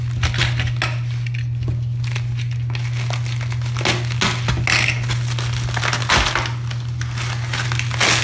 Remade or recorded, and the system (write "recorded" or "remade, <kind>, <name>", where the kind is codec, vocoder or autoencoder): recorded